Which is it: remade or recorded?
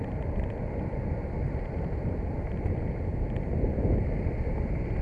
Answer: recorded